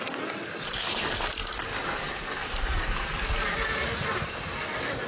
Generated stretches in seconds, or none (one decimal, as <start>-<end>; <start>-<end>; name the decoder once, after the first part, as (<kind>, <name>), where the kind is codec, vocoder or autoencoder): 0.0-1.4 (vocoder, BigVGAN v2); 2.0-5.1